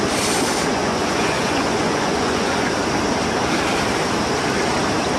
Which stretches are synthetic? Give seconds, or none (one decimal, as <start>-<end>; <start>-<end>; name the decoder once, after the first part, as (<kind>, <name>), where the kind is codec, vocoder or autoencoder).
0.7-2.7 (vocoder, Vocos)

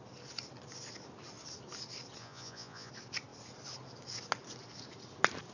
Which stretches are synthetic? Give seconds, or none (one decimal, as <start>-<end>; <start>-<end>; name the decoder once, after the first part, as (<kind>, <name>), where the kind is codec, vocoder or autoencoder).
2.2-2.9 (vocoder, Vocos)

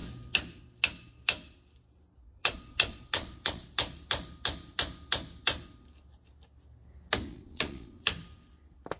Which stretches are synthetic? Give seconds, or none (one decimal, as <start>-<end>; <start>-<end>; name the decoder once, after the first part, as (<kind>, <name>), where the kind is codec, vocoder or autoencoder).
2.2-3.6 (vocoder, Vocos); 7.3-8.1